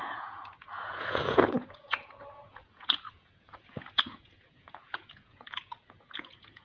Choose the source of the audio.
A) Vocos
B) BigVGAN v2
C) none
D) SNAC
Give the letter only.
A